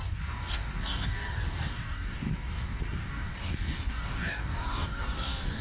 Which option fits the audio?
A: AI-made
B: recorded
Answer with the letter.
A